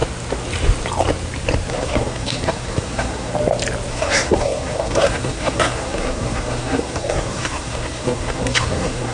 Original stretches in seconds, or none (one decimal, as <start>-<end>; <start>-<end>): 0.0-1.7; 3.3-3.9